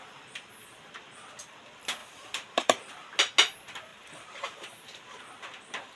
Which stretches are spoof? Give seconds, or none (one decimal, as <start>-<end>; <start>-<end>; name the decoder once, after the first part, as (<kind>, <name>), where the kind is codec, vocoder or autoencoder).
2.0-2.9 (vocoder, BigVGAN v2); 3.9-5.2